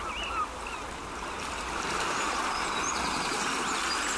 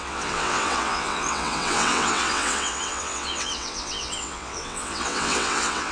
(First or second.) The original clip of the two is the first